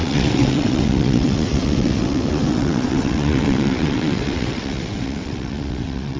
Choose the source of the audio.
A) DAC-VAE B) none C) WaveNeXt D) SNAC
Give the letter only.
C